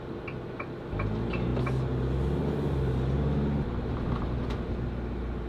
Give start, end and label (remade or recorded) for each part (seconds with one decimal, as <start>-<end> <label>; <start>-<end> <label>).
0.0-5.5 recorded